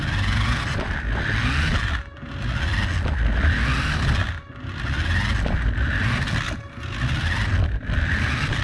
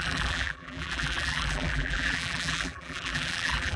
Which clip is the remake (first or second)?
second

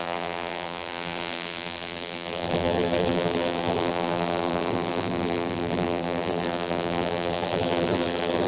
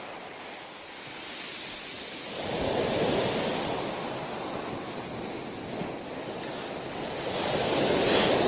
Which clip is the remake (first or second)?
first